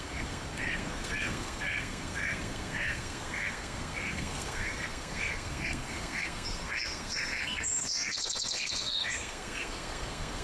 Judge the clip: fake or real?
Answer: fake